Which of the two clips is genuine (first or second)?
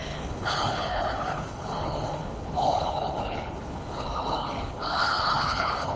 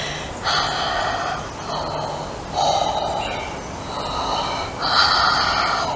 second